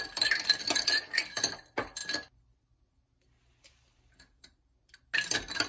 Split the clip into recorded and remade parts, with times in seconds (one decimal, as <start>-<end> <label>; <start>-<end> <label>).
0.0-5.7 recorded